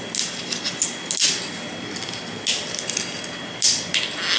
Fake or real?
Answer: real